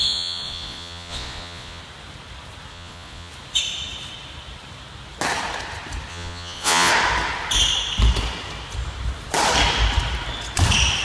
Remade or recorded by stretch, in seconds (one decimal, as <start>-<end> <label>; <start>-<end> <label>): 0.0-1.8 remade; 1.8-2.7 recorded; 2.7-3.3 remade; 3.3-6.1 recorded; 6.1-6.9 remade; 6.9-11.0 recorded